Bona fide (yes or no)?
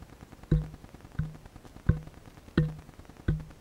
yes